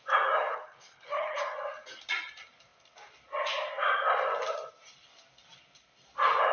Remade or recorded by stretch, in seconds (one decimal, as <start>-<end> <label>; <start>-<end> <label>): 0.0-0.5 recorded; 0.5-1.4 remade; 1.4-6.5 recorded